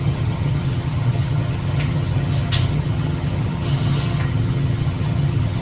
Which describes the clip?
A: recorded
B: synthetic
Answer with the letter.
B